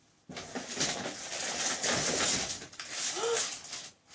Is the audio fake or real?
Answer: real